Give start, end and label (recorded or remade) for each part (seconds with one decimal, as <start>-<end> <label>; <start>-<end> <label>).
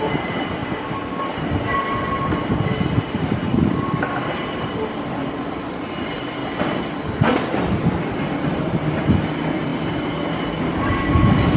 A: 0.0-11.6 recorded